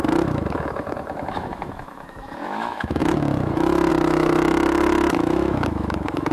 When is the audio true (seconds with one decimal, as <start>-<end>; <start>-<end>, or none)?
none